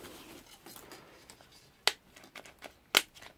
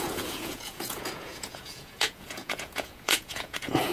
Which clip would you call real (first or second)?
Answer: first